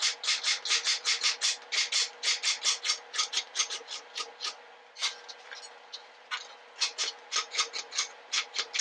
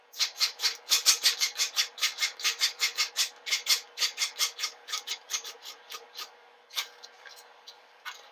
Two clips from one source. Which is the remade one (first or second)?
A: second